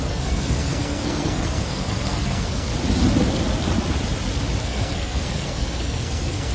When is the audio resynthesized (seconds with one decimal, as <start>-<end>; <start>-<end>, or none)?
0.0-2.7; 4.6-6.5

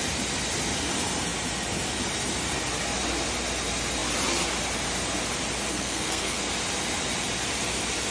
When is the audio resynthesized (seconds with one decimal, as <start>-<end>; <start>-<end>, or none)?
5.7-6.5

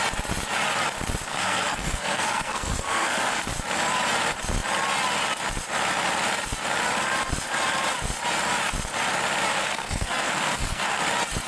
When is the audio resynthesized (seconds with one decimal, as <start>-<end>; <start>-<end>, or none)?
1.3-3.4; 9.5-11.0

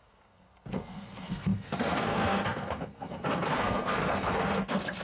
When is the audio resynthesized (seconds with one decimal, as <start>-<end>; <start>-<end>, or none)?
0.0-5.0

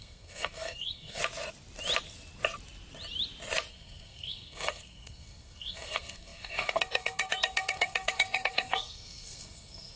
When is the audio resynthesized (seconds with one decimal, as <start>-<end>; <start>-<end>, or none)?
0.0-1.2; 3.7-10.0

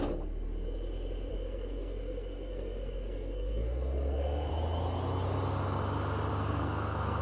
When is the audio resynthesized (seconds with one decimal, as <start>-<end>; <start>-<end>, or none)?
1.3-4.5; 6.3-7.2